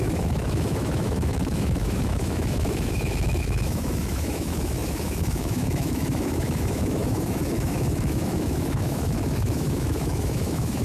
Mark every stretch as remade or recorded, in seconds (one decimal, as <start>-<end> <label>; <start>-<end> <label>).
0.0-10.8 remade